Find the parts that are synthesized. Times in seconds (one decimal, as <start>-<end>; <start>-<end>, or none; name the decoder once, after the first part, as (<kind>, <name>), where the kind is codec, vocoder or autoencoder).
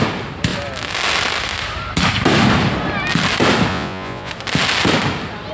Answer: 3.7-4.3 (vocoder, Vocos)